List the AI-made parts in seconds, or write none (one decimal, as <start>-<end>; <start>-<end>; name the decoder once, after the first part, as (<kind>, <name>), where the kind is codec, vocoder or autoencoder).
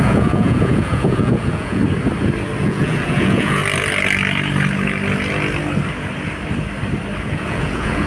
0.0-1.8 (vocoder, Vocos); 2.6-3.6; 7.2-8.1